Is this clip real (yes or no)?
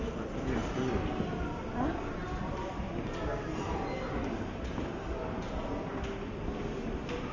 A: yes